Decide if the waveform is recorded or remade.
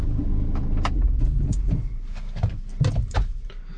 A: recorded